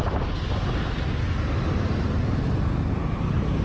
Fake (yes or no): no